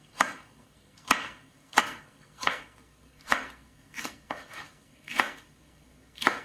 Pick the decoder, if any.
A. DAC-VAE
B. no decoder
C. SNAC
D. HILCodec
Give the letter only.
C